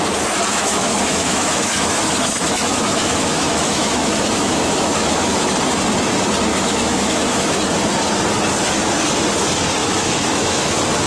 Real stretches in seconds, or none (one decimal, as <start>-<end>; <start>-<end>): 0.0-0.5; 5.5-6.5; 7.6-9.8; 10.7-11.1